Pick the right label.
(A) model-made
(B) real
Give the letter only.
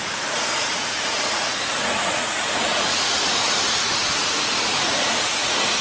A